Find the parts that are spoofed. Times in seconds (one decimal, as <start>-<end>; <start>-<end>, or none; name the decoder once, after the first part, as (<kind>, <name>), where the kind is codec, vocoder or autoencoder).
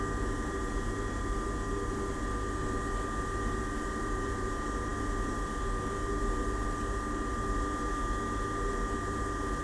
none